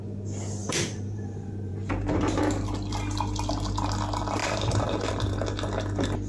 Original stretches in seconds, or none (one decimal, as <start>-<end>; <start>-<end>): 0.0-0.6; 2.4-4.4; 5.1-6.3